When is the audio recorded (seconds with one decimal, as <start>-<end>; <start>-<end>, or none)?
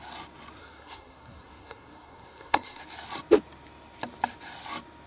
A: 0.0-0.6; 2.8-5.1